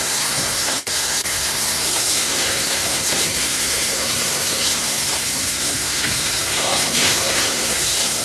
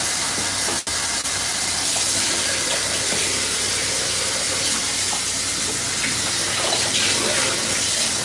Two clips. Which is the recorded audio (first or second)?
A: second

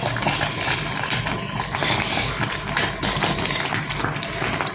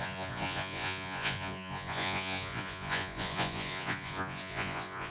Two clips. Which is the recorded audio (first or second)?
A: first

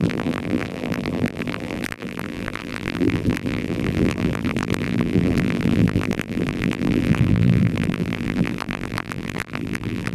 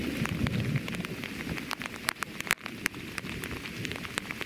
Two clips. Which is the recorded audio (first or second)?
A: second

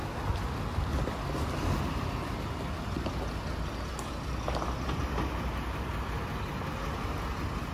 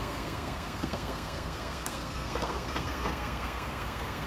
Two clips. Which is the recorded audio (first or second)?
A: first